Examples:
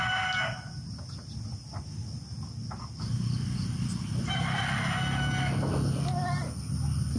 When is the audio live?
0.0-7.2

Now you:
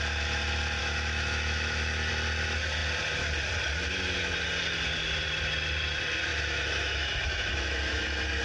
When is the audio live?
0.0-0.8; 2.1-6.3